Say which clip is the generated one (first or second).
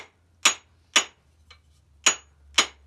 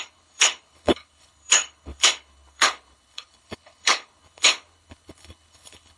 second